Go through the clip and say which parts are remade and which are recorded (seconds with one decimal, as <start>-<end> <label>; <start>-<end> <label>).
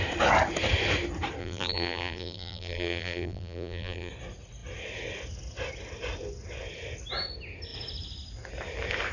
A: 0.0-1.4 recorded; 1.4-4.1 remade; 4.1-9.1 recorded